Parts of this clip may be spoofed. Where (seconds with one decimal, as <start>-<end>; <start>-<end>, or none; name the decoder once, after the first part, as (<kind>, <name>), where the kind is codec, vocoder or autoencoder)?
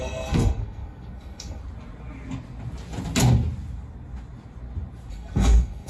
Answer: 0.0-1.6 (codec, SNAC); 5.1-5.9